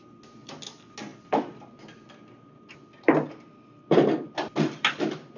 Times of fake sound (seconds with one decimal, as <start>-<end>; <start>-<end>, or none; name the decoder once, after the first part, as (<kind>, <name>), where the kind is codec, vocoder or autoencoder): none